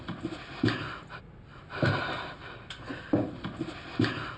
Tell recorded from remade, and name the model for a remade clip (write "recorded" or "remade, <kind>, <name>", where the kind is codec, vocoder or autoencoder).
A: recorded